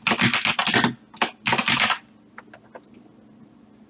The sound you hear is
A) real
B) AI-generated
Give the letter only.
A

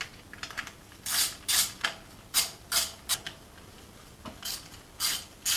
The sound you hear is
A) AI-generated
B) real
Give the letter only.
B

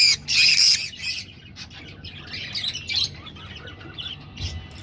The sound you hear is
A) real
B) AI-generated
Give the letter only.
A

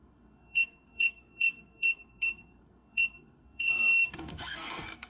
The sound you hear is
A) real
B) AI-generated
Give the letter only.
B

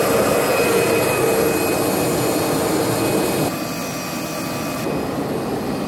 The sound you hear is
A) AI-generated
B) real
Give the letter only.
B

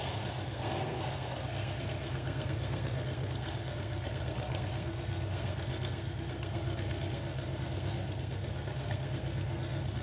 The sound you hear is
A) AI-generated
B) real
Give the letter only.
A